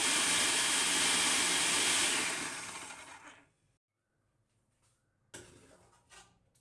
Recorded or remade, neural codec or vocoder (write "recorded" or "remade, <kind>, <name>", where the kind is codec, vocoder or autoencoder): recorded